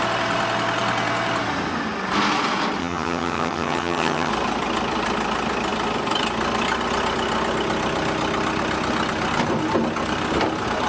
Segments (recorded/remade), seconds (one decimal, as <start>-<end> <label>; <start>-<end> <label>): 0.0-2.8 recorded; 2.8-4.3 remade; 4.3-10.9 recorded